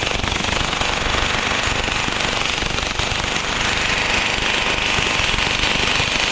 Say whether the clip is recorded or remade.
recorded